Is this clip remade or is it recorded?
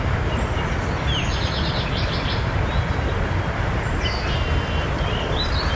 recorded